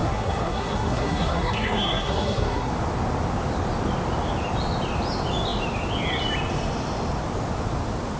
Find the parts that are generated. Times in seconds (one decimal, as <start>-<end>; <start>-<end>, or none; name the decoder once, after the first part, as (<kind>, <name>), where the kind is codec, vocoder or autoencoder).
0.0-2.7 (codec, SNAC)